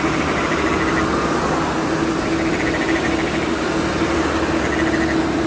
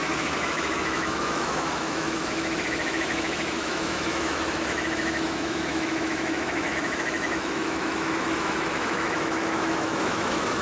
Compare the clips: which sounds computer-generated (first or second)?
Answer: second